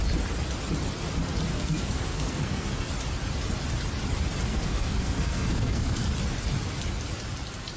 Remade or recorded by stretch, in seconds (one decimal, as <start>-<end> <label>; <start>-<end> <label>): 0.0-1.5 recorded; 1.5-2.9 remade; 2.9-4.5 recorded; 4.5-6.1 remade; 6.1-7.8 recorded